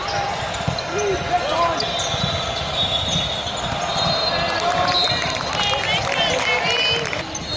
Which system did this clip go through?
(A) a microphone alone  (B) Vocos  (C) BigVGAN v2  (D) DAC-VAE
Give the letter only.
A